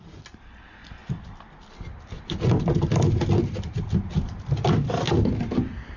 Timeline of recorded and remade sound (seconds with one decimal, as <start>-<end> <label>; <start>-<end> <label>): 0.0-6.0 recorded